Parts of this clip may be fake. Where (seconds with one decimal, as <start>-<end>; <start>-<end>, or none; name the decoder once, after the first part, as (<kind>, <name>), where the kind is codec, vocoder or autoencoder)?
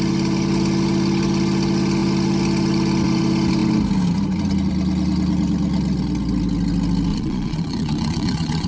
7.1-8.7 (vocoder, Vocos)